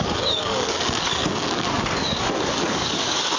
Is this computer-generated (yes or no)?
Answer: yes